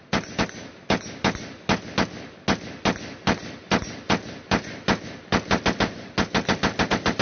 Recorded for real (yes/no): yes